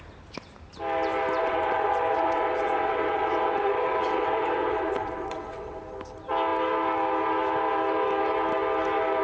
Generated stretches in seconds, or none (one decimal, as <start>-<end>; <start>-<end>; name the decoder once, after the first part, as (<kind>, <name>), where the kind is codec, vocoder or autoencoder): 1.4-5.8 (vocoder, WaveNeXt)